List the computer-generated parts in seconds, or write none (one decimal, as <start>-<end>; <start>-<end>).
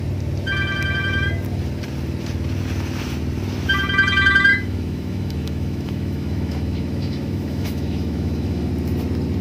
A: 4.5-8.7